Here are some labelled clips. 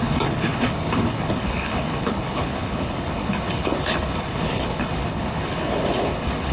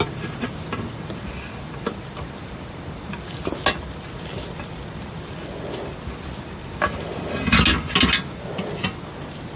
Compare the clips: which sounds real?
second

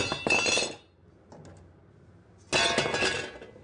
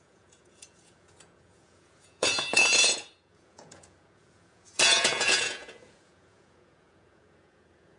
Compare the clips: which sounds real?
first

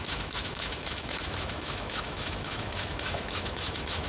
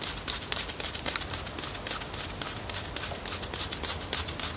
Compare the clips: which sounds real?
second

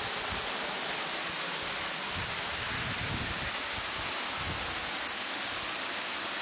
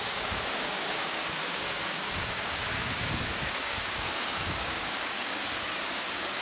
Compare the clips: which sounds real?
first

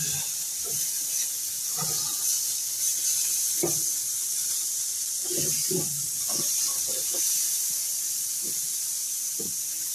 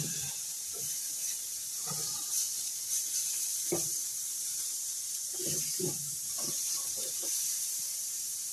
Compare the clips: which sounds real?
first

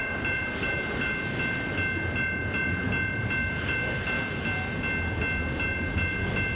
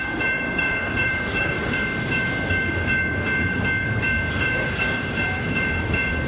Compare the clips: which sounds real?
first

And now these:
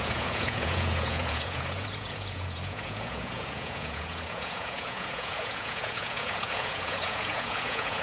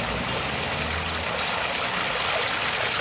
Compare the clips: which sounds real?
second